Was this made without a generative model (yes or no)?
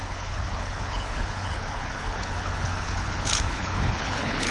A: no